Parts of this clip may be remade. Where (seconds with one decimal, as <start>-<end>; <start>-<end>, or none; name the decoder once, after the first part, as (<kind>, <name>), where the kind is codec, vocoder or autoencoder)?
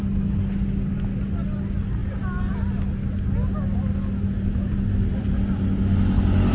none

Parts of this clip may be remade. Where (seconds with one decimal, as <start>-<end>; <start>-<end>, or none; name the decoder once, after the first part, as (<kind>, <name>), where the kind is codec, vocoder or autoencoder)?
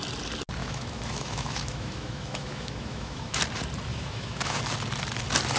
0.6-3.4 (autoencoder, DAC-VAE); 3.9-4.6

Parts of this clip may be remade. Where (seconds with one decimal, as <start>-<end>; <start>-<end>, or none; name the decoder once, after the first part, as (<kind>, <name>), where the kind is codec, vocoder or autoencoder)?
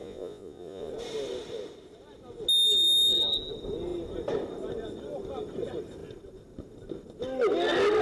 0.0-0.9 (vocoder, Vocos)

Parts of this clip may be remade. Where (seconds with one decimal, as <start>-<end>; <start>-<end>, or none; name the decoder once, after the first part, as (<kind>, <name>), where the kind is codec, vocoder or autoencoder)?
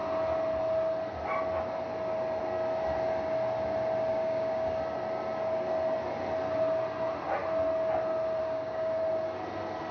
4.1-4.8 (codec, DAC); 8.4-9.0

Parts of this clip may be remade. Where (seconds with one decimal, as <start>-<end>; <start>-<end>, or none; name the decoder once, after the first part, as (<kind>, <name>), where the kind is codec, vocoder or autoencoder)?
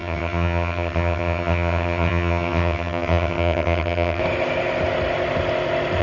0.0-4.2 (vocoder, HiFi-GAN)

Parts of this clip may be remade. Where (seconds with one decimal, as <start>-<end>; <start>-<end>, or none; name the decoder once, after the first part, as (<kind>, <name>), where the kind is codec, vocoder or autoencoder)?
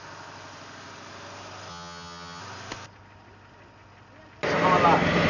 1.7-2.4 (vocoder, HiFi-GAN)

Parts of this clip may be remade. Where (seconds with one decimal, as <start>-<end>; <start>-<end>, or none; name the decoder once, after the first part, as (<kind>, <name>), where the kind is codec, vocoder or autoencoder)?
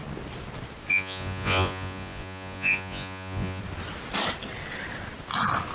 0.9-3.6 (vocoder, Vocos)